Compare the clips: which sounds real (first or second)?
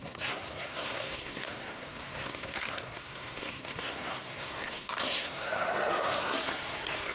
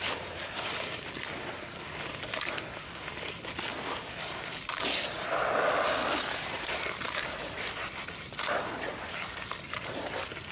second